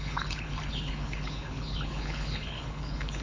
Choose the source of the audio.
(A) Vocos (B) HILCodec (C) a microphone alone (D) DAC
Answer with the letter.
B